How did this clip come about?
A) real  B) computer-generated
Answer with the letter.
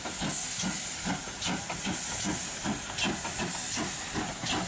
A